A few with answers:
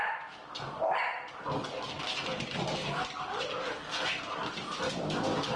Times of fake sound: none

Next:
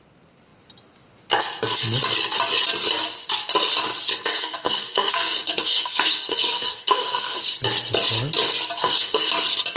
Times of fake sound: 4.3-7.4 (codec, SNAC); 8.8-9.3

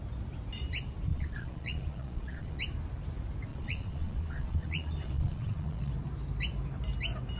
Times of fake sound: 1.1-2.6 (vocoder, Vocos); 3.5-5.9

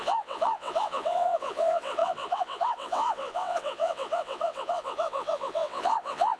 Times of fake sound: 0.0-6.4 (vocoder, WaveNeXt)

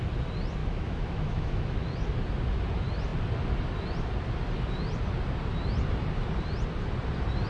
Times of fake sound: 0.6-1.7 (autoencoder, DAC-VAE)

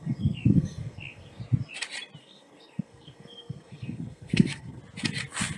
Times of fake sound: 0.0-1.4 (codec, SNAC); 2.2-4.8

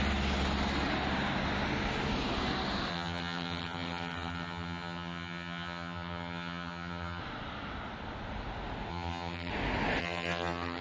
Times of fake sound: 2.9-7.2 (vocoder, HiFi-GAN); 8.9-9.5; 10.0-10.8

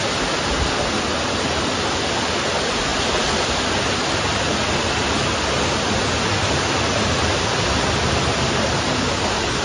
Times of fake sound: none